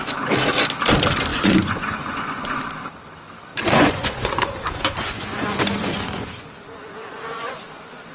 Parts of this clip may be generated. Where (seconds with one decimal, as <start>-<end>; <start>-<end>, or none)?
1.3-2.6; 3.5-8.1